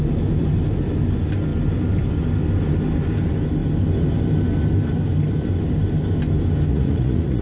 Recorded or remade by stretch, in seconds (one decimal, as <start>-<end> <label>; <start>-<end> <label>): 0.0-6.7 recorded; 6.7-7.4 remade